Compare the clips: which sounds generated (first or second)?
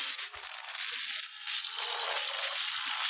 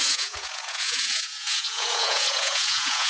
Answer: second